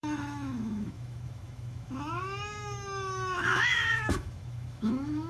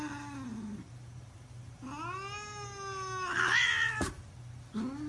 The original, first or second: second